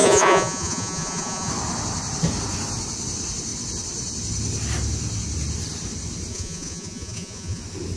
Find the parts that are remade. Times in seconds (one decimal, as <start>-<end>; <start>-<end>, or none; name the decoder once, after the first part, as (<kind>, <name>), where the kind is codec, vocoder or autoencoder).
0.0-1.5 (vocoder, Vocos); 6.3-7.6